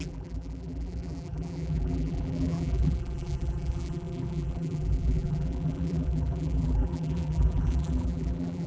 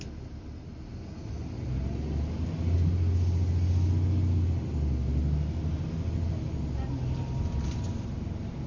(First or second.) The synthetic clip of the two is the first